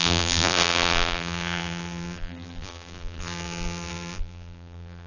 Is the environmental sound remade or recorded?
remade